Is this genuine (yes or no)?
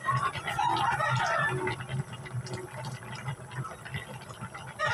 yes